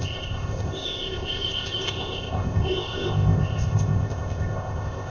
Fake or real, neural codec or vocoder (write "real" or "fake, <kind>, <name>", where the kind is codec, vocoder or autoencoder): fake, codec, ZipCodec